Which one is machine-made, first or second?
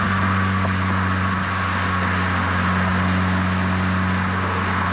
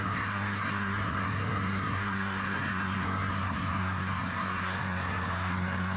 second